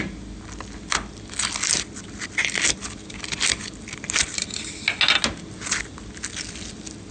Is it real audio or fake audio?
real